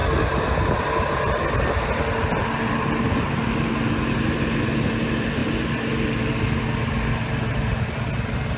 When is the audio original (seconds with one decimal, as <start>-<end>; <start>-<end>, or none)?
0.0-8.6